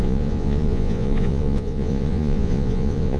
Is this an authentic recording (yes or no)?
no